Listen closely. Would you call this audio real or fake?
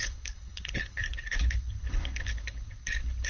fake